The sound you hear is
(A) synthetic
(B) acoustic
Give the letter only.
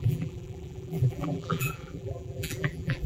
A